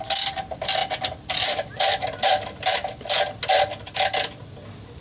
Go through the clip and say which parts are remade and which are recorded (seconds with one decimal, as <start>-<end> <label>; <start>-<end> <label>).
0.0-5.0 recorded